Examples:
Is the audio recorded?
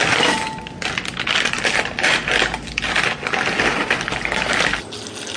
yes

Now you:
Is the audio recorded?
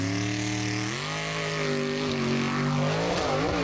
yes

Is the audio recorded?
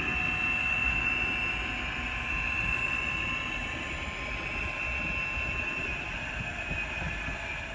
yes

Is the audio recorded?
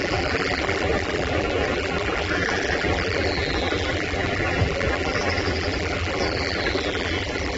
no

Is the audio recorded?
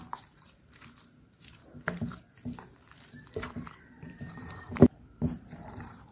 no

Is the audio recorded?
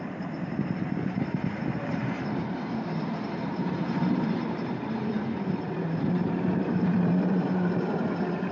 no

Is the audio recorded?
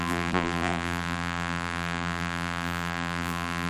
no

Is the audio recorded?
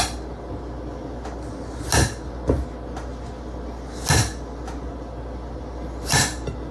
yes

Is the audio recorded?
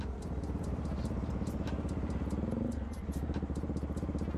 yes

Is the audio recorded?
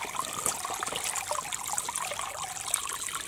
yes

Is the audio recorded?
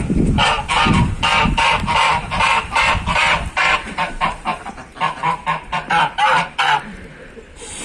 no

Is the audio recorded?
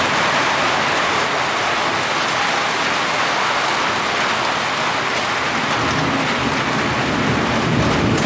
yes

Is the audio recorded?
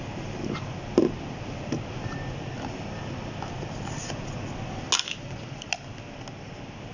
yes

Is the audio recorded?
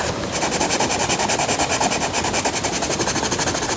yes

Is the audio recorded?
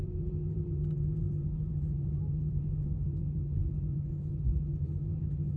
no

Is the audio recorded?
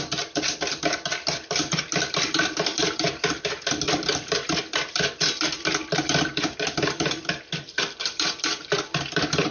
no